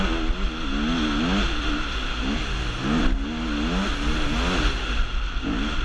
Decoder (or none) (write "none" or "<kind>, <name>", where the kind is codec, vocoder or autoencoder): none